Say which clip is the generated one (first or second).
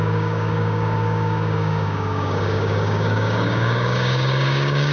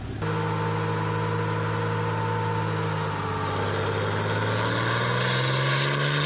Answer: first